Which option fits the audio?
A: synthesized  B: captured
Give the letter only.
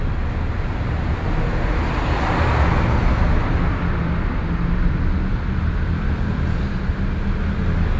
B